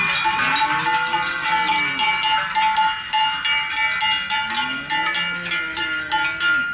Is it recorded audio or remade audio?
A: recorded